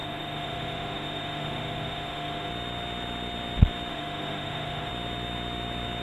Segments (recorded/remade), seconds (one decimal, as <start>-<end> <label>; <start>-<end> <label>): 0.0-2.5 remade; 2.5-3.9 recorded; 3.9-4.9 remade; 4.9-6.0 recorded